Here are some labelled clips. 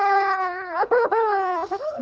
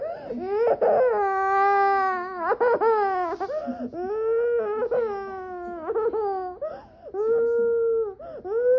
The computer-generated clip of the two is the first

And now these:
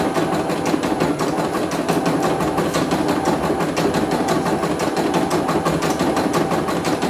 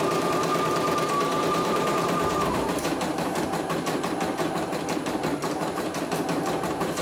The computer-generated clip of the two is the second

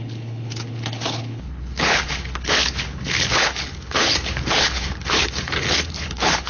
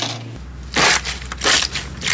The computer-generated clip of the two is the first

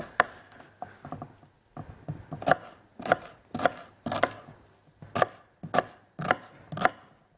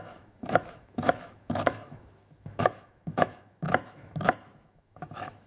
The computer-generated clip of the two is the second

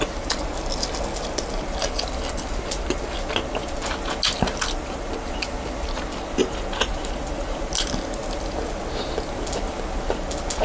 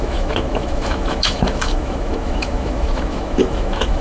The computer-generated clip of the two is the second